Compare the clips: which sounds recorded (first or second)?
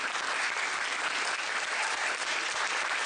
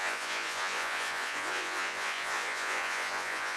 first